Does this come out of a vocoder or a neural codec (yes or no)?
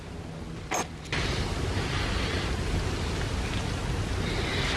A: no